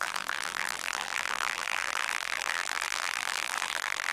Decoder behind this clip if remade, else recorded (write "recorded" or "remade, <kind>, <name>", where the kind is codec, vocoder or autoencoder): remade, vocoder, BigVGAN v2